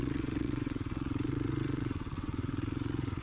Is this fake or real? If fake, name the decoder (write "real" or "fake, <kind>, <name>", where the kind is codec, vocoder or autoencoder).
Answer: fake, vocoder, WaveNeXt